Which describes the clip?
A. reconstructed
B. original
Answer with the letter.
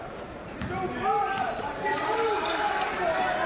A